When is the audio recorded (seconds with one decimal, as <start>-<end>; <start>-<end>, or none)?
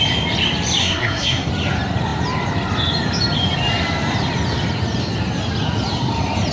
0.0-0.8; 1.5-6.5